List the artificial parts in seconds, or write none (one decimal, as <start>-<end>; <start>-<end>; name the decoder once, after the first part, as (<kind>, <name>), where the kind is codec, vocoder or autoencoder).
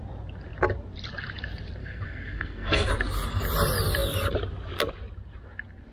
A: 1.8-2.9 (codec, SNAC)